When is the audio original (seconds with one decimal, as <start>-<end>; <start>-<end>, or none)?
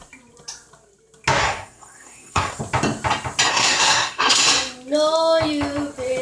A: 0.0-1.4; 2.6-3.5; 4.4-6.2